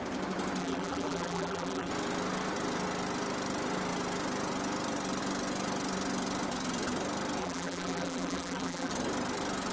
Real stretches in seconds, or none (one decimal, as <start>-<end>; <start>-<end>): 0.0-0.6; 1.9-7.4; 8.9-9.7